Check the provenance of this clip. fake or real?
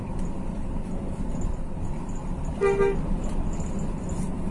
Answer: real